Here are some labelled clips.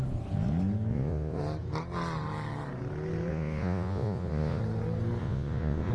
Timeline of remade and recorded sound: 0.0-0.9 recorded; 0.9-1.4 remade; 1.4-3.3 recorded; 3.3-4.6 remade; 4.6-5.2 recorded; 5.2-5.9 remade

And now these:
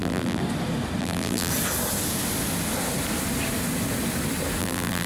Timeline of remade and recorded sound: 0.0-0.4 remade; 0.4-1.0 recorded; 1.0-1.5 remade; 1.5-4.6 recorded; 4.6-5.1 remade

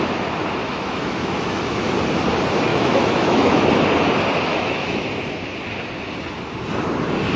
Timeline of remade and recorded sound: 0.0-0.6 recorded; 0.6-1.9 remade; 1.9-2.7 recorded; 2.7-3.7 remade; 3.7-4.5 recorded; 4.5-5.1 remade; 5.1-7.4 recorded